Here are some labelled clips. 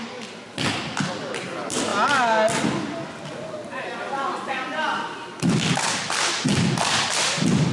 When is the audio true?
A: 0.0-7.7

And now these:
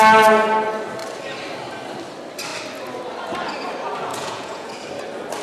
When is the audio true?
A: 0.0-4.1; 4.7-5.4

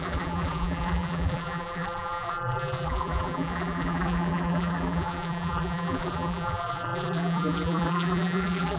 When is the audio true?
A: none